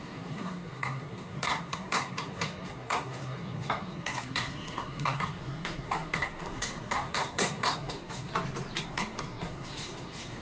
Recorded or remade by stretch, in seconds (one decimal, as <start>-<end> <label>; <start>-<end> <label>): 0.0-8.3 remade; 8.3-8.8 recorded; 8.8-10.4 remade